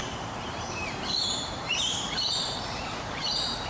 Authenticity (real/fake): fake